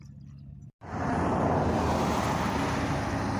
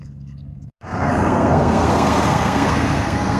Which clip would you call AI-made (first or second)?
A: second